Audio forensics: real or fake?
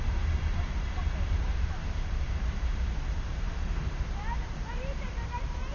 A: fake